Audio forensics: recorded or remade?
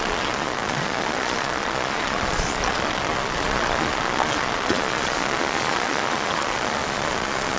remade